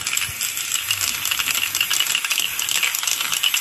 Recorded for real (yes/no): yes